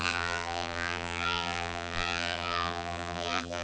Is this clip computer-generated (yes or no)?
yes